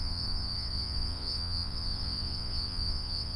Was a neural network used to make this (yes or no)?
yes